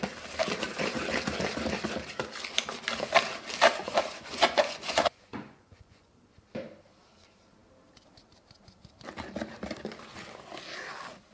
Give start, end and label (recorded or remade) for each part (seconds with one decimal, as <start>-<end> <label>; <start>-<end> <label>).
0.0-3.8 recorded; 3.8-6.1 remade; 6.1-11.3 recorded